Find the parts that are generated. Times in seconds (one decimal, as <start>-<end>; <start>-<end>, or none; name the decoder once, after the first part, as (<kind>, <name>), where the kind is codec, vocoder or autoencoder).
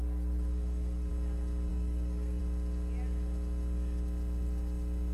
0.0-1.1 (codec, SNAC); 1.7-2.4